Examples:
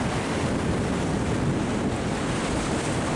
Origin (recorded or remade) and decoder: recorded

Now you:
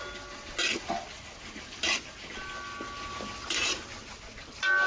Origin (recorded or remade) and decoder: recorded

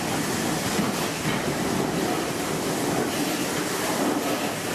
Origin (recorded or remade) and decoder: recorded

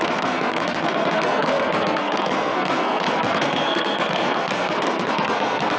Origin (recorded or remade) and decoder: remade, codec, SNAC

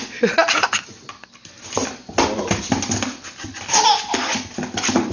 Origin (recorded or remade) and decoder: recorded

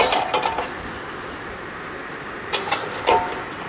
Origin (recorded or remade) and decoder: recorded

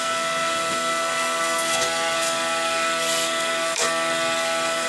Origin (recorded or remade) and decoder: remade, codec, SNAC